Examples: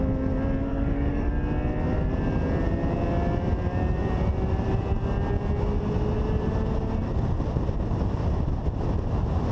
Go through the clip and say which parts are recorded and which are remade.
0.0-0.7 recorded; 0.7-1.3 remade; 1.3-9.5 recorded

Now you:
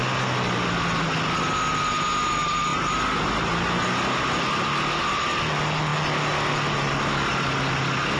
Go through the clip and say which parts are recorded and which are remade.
0.0-8.2 recorded